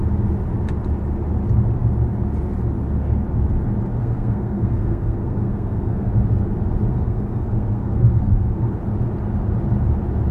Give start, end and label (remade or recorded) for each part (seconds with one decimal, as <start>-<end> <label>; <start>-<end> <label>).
0.0-4.0 recorded; 4.0-6.1 remade; 6.1-6.9 recorded; 6.9-8.7 remade; 8.7-10.3 recorded

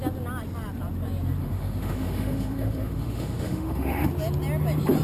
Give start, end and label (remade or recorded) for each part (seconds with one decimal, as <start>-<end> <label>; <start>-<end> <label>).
0.0-1.4 recorded; 1.4-4.1 remade; 4.1-5.0 recorded

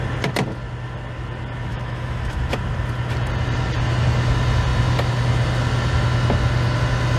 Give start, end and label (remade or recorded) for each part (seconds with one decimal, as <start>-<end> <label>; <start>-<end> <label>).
0.0-1.7 recorded; 1.7-2.5 remade; 2.5-7.2 recorded

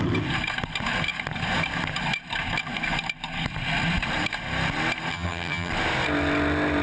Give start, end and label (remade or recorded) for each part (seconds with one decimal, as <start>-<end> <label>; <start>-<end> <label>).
0.0-5.1 recorded; 5.1-5.7 remade; 5.7-6.8 recorded

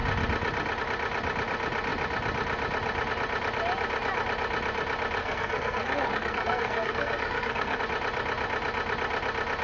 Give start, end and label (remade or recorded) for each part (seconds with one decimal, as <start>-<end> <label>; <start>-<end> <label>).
0.0-5.2 recorded; 5.2-7.8 remade; 7.8-9.6 recorded